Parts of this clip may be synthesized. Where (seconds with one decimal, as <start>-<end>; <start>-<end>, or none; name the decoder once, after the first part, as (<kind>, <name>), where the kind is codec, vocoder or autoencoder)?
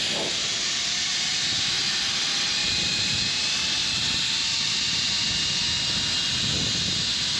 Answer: 2.6-3.2 (vocoder, BigVGAN v2); 3.8-5.1